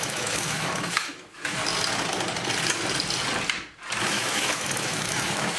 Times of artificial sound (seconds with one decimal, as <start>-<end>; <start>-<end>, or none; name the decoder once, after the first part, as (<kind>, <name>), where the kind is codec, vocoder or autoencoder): 0.0-1.6 (autoencoder, DAC-VAE); 4.0-5.6